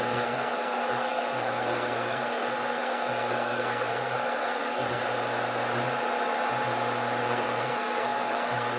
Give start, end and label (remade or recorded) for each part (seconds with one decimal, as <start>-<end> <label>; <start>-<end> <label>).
0.0-5.0 remade; 5.0-7.2 recorded; 7.2-8.8 remade